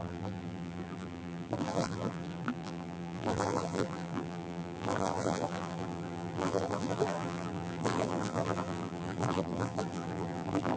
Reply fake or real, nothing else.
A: fake